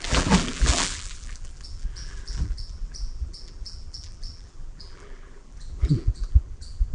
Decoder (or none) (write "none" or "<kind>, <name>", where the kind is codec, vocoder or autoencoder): vocoder, BigVGAN v2